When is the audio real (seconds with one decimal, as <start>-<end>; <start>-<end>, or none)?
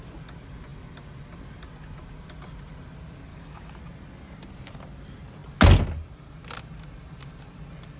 0.0-3.3; 3.8-8.0